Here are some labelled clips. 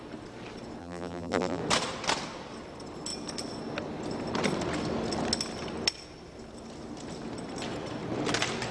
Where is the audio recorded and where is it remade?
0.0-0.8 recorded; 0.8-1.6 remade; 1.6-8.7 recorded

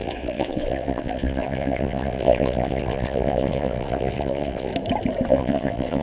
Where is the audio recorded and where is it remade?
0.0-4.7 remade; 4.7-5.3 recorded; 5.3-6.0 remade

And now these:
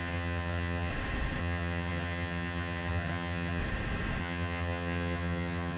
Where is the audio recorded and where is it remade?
0.0-0.9 remade; 0.9-1.4 recorded; 1.4-3.6 remade; 3.6-4.2 recorded; 4.2-5.8 remade

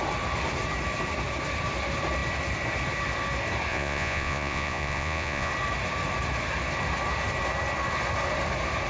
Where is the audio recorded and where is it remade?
0.0-3.7 recorded; 3.7-5.5 remade; 5.5-8.9 recorded

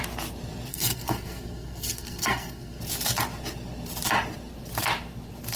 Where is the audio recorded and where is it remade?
0.0-0.7 recorded; 0.7-2.8 remade; 2.8-5.6 recorded

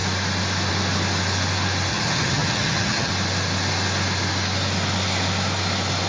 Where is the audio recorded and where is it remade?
0.0-1.9 recorded; 1.9-3.1 remade; 3.1-6.1 recorded